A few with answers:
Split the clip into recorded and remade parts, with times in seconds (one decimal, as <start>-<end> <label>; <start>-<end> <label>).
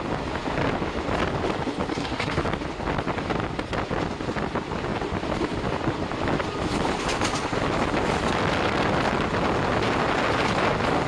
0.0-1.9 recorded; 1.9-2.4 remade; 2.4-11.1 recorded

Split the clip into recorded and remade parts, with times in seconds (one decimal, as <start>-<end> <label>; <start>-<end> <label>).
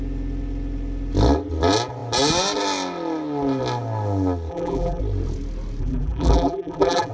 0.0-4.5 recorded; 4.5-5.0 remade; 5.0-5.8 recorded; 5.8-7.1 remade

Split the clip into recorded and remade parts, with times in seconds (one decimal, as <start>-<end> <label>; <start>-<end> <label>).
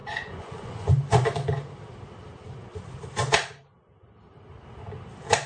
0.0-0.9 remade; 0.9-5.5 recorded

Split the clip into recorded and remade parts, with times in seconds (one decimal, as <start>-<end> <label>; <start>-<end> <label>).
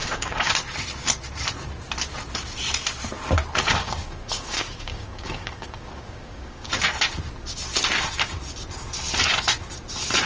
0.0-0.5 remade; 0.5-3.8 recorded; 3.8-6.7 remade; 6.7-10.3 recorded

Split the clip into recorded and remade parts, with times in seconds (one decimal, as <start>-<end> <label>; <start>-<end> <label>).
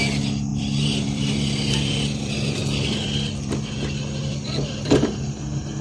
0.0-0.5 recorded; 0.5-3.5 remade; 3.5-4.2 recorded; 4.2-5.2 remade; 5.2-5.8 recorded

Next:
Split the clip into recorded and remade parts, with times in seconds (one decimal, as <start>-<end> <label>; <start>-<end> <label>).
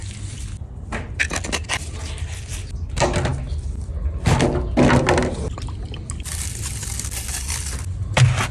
0.0-8.5 recorded